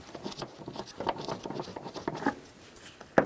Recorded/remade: recorded